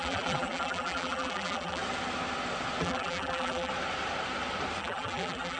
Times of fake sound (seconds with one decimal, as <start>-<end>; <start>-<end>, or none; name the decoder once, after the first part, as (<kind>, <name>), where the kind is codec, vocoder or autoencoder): 0.0-1.8 (vocoder, BigVGAN v2); 2.8-3.7; 4.8-5.6